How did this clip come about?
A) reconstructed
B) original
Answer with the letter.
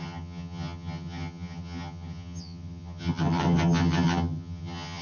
A